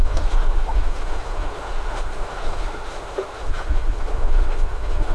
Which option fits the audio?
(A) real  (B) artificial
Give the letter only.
B